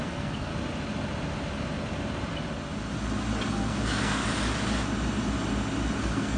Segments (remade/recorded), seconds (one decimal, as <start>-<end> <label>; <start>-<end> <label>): 0.0-0.5 remade; 0.5-3.5 recorded; 3.5-4.2 remade; 4.2-6.0 recorded; 6.0-6.4 remade